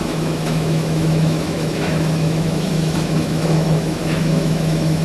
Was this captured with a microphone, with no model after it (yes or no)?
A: no